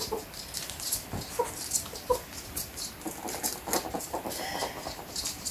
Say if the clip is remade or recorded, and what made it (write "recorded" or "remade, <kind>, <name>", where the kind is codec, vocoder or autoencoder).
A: recorded